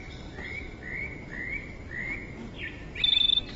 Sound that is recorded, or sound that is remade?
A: recorded